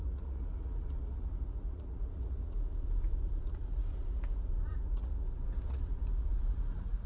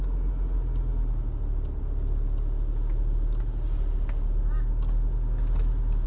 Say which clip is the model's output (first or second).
first